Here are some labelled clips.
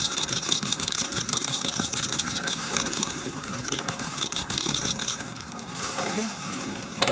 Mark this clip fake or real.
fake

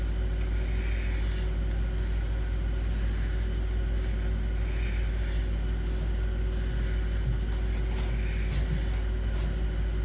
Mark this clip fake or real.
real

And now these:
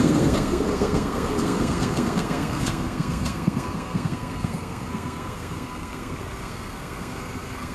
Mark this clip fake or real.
fake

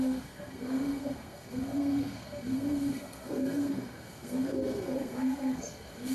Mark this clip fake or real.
fake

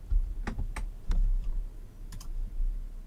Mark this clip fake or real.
real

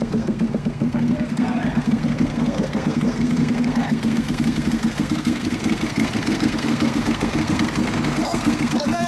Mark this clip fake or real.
fake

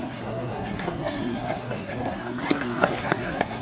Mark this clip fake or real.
fake